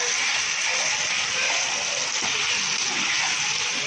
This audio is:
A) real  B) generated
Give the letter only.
A